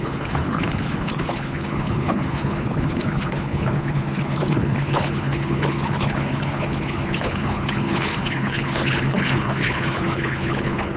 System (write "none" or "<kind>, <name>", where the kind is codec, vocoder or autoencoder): codec, HILCodec